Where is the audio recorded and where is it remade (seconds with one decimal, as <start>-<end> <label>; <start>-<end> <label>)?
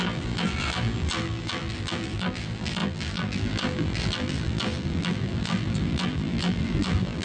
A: 0.0-7.2 remade